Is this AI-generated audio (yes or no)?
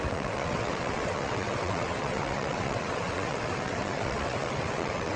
yes